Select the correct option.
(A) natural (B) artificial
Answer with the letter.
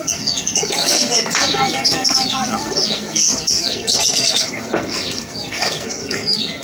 B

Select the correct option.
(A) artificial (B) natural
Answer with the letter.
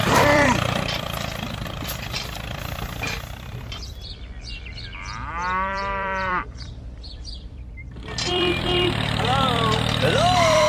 A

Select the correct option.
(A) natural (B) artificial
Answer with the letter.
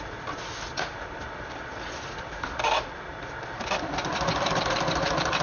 B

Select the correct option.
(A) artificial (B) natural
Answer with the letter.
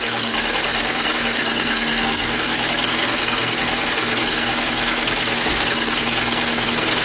A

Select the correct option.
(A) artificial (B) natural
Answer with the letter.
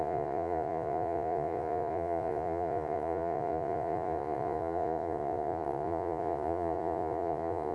A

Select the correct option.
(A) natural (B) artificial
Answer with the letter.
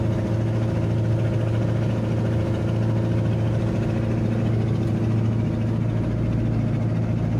A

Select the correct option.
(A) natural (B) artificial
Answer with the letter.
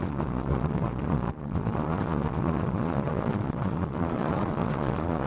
B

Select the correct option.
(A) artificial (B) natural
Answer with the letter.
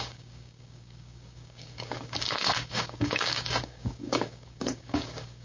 A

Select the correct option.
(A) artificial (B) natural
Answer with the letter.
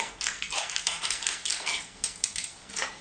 A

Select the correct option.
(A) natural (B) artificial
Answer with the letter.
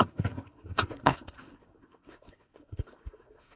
B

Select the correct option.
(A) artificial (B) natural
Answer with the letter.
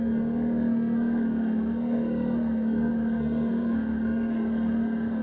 A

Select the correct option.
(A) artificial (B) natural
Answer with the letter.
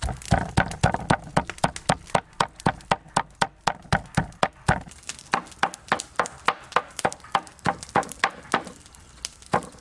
B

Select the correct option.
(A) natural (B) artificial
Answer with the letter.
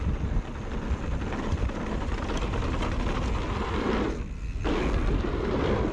A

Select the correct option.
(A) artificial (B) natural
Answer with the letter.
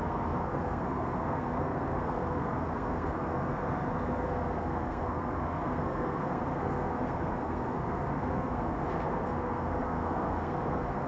A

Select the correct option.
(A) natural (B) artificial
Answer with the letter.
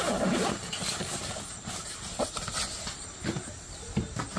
A